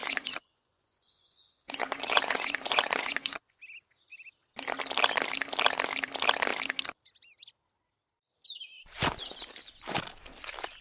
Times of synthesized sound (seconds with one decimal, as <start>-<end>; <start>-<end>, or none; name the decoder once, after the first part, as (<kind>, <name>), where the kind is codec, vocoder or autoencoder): 0.0-3.6 (vocoder, Vocos)